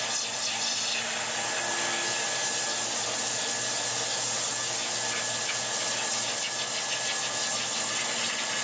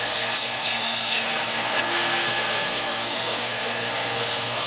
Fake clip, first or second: second